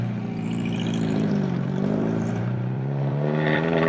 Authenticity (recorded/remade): remade